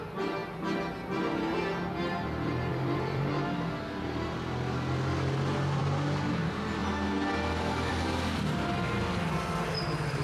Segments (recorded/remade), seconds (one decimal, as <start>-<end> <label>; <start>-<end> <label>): 0.0-2.7 recorded; 2.7-3.3 remade; 3.3-10.2 recorded